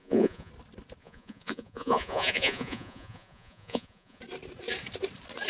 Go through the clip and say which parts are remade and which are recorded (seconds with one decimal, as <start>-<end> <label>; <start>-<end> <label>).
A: 0.0-0.5 remade; 0.5-1.0 recorded; 1.0-4.2 remade; 4.2-5.5 recorded